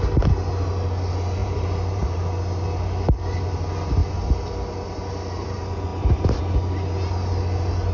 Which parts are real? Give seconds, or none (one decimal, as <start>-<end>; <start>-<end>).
0.0-1.4; 2.2-5.9; 6.4-7.9